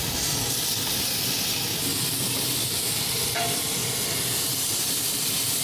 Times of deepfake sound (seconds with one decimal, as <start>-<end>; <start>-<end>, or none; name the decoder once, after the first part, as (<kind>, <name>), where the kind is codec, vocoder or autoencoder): 0.0-1.9 (vocoder, BigVGAN v2); 3.4-3.8; 4.9-5.6